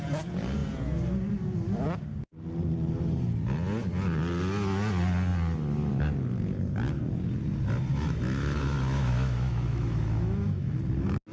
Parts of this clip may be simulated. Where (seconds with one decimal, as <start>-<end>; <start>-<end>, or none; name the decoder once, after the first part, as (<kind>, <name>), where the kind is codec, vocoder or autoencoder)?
7.9-10.8 (autoencoder, DAC-VAE)